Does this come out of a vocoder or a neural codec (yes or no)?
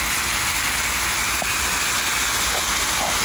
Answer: no